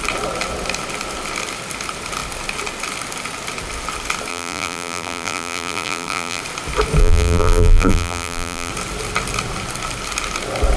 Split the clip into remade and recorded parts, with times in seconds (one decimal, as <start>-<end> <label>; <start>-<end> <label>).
0.0-4.3 recorded; 4.3-6.4 remade; 6.4-7.0 recorded; 7.0-8.7 remade; 8.7-10.8 recorded